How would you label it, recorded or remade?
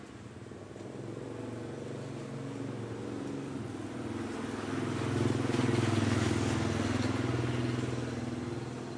recorded